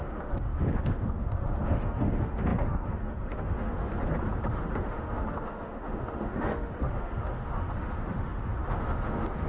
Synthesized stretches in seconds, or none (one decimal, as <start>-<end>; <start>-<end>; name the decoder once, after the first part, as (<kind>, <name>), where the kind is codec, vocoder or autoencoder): 0.0-3.9 (autoencoder, DAC-VAE); 4.5-9.5